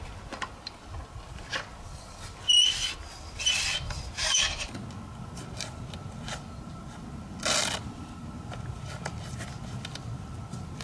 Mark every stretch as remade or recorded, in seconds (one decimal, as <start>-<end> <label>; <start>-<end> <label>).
0.0-4.2 recorded; 4.2-4.8 remade; 4.8-10.8 recorded